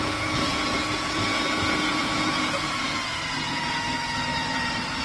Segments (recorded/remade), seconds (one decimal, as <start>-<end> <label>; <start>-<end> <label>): 0.0-4.3 remade; 4.3-5.0 recorded